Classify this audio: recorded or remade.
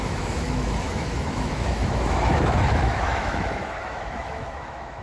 remade